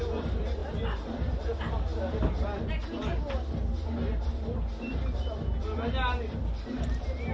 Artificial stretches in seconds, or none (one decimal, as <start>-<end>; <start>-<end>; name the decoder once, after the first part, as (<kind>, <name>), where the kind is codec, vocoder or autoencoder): none